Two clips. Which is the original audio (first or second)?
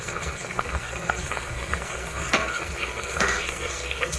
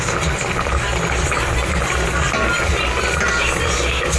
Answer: second